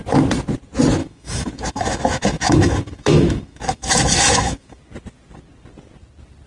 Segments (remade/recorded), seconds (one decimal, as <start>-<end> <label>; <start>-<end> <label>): 0.0-1.0 recorded; 1.0-4.8 remade; 4.8-6.5 recorded